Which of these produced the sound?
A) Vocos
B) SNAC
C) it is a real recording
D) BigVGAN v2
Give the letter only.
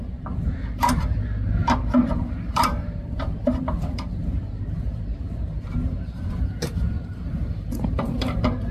D